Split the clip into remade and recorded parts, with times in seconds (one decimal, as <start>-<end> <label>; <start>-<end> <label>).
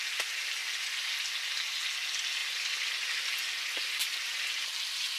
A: 0.0-2.4 recorded; 2.4-4.4 remade; 4.4-5.2 recorded